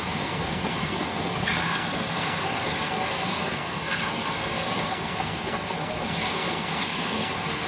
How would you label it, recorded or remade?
remade